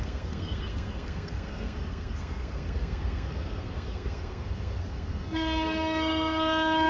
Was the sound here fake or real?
fake